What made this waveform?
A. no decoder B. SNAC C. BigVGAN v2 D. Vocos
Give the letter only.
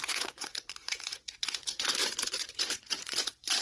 D